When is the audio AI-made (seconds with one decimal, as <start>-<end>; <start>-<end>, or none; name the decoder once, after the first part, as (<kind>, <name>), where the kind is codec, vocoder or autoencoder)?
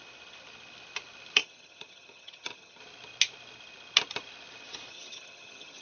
1.4-2.8 (vocoder, HiFi-GAN); 4.9-5.8